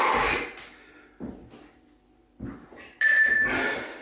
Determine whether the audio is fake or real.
real